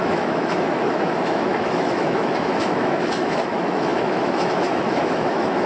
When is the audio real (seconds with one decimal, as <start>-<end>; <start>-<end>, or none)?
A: none